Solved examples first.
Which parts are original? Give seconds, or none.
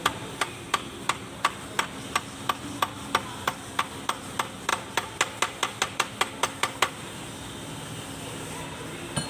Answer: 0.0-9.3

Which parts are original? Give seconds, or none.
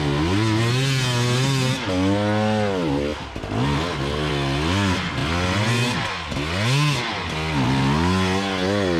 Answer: 0.0-9.0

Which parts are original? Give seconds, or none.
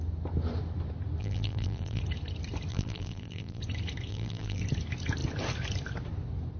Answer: 0.0-1.2; 2.0-2.7; 3.6-4.1; 4.6-6.6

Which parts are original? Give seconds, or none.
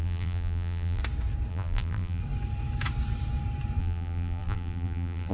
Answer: 1.0-1.5; 2.2-3.8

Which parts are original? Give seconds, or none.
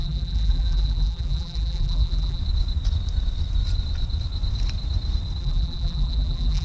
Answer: 2.4-5.4